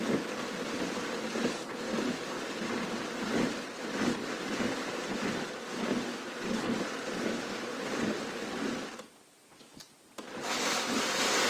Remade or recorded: recorded